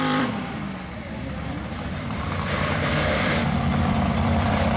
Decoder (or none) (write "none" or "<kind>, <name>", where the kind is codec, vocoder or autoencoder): vocoder, BigVGAN v2